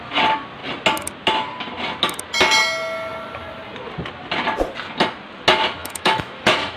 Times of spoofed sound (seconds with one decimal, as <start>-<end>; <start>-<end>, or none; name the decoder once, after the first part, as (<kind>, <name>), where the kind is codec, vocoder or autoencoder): 5.8-6.8 (autoencoder, DAC-VAE)

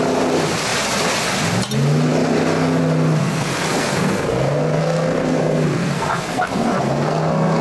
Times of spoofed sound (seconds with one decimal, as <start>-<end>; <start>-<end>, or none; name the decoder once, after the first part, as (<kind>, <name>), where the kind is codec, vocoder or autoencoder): 3.2-7.6 (codec, SNAC)

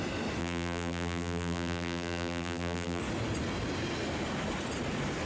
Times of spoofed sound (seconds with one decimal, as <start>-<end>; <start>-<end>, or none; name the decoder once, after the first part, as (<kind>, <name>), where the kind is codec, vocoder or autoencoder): 0.4-3.0 (vocoder, BigVGAN v2)